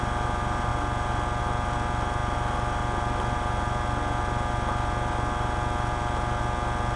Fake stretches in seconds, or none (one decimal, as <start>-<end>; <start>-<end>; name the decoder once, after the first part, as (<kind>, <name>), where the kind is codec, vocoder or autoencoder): none